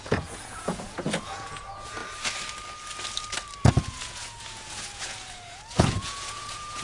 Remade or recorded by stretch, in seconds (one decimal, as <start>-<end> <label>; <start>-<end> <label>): 0.0-2.0 remade; 2.0-3.7 recorded; 3.7-6.8 remade